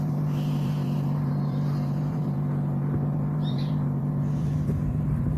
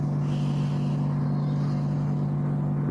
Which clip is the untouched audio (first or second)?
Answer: second